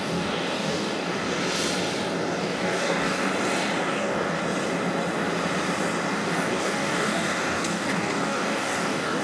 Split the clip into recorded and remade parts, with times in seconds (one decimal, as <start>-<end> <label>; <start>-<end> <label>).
0.0-1.4 remade; 1.4-2.4 recorded; 2.4-3.3 remade; 3.3-3.8 recorded; 3.8-4.4 remade; 4.4-6.1 recorded; 6.1-9.2 remade